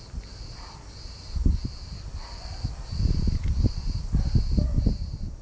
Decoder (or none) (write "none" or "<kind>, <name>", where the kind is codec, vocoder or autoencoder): none